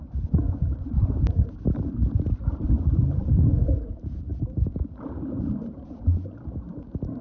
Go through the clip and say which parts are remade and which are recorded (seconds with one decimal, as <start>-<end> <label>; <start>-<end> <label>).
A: 0.0-7.2 recorded

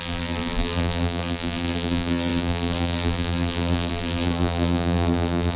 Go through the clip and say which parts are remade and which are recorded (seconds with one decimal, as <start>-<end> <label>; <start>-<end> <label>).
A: 0.0-5.6 remade

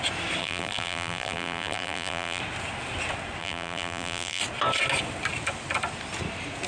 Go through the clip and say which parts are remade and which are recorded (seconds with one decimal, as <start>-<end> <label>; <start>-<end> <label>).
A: 0.0-0.4 recorded; 0.4-2.4 remade; 2.4-3.4 recorded; 3.4-4.4 remade; 4.4-6.7 recorded

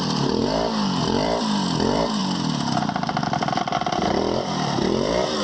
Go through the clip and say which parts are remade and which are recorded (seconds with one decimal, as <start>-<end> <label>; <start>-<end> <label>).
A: 0.0-0.4 remade; 0.4-1.0 recorded; 1.0-5.4 remade

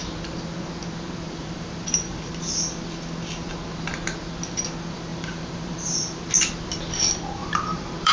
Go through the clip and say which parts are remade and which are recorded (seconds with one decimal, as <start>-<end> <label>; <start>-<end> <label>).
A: 0.0-1.4 recorded; 1.4-2.3 remade; 2.3-5.1 recorded; 5.1-6.3 remade; 6.3-7.4 recorded; 7.4-8.1 remade

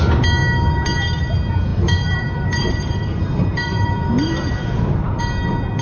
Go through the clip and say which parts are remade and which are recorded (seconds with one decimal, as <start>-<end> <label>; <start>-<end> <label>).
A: 0.0-1.7 recorded; 1.7-5.2 remade; 5.2-5.8 recorded